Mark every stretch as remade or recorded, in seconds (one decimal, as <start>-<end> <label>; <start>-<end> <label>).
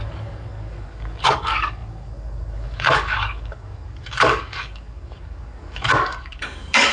0.0-6.9 remade